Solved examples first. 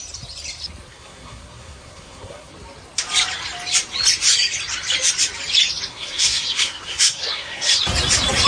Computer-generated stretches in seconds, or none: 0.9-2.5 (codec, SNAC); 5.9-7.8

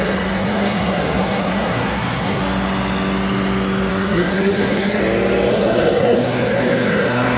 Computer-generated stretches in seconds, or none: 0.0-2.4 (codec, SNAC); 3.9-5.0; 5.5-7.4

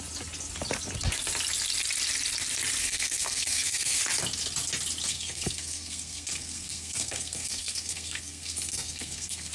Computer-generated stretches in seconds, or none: 2.8-4.0 (codec, SNAC); 5.1-9.5

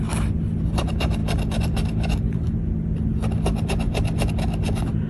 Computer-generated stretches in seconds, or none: none

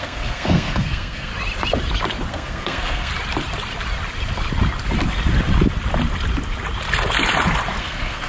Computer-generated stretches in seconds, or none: 0.0-1.3 (codec, SNAC); 2.3-3.1; 7.8-8.3

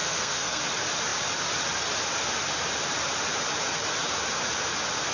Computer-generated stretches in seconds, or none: 0.0-0.6 (codec, SNAC)